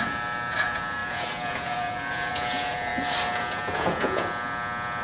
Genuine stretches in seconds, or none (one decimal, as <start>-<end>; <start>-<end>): 2.9-3.4